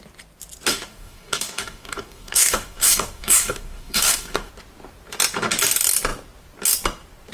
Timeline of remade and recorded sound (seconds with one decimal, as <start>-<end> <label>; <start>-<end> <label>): 0.0-0.7 recorded; 0.7-4.5 remade; 4.5-7.3 recorded

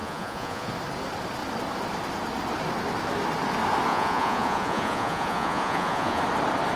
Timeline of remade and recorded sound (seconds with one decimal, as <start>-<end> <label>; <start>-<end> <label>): 0.0-0.7 remade; 0.7-3.9 recorded; 3.9-6.2 remade; 6.2-6.8 recorded

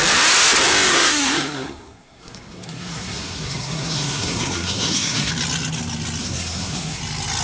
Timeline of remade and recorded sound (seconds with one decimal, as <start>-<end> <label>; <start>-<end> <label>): 0.0-0.9 recorded; 0.9-5.3 remade; 5.3-6.2 recorded; 6.2-7.0 remade; 7.0-7.4 recorded

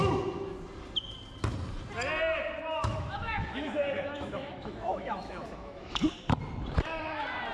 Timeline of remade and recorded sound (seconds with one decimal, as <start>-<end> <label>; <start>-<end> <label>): 0.0-2.8 recorded; 2.8-6.0 remade; 6.0-7.5 recorded

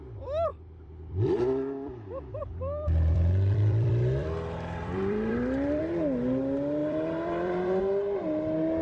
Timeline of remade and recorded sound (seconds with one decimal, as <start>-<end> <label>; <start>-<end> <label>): 0.0-0.5 recorded; 0.5-5.8 remade; 5.8-6.8 recorded; 6.8-7.8 remade; 7.8-8.8 recorded